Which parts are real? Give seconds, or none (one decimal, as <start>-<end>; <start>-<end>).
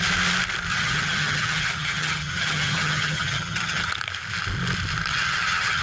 0.0-0.7; 3.9-5.1